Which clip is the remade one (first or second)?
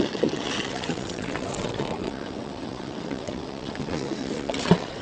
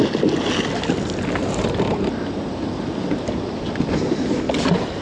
first